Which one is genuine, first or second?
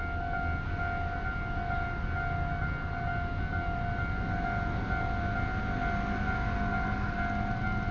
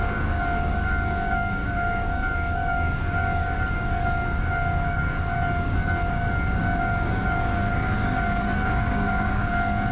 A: first